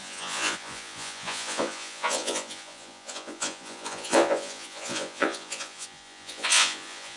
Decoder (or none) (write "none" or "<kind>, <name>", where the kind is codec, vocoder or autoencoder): vocoder, Vocos